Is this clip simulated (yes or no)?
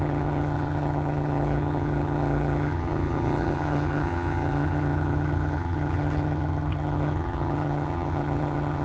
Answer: yes